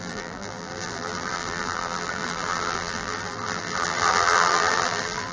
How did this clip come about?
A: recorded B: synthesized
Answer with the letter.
B